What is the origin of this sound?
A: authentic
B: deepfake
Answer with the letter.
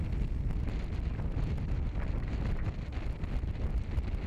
A